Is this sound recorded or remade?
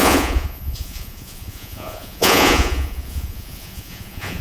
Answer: remade